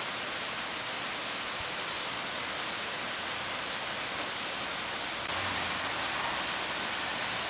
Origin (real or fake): real